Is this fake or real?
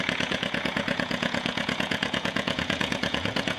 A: fake